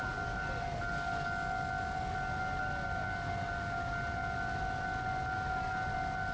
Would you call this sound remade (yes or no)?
no